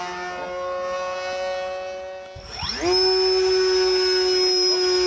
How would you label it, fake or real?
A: real